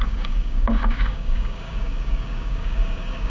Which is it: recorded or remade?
remade